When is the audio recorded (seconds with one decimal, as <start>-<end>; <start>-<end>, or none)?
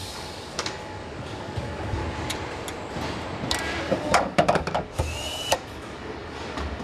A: 2.0-3.8